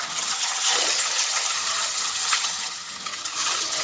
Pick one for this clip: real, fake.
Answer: fake